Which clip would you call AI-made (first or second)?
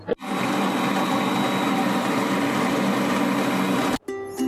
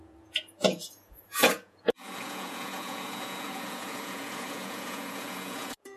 second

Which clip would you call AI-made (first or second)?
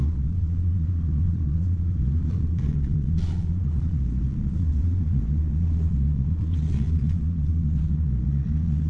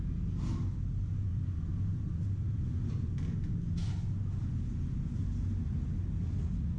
first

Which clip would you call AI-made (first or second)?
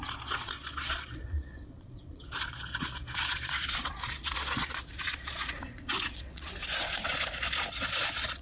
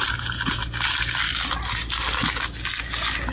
first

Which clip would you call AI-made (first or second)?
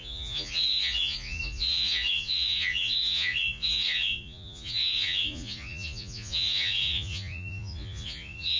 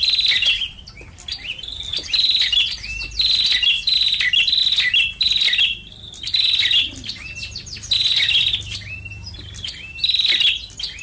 first